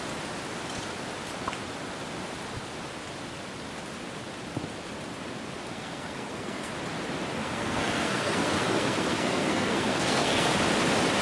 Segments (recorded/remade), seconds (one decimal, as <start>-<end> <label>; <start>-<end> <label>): 0.0-5.7 recorded; 5.7-6.7 remade; 6.7-7.4 recorded; 7.4-10.5 remade; 10.5-11.2 recorded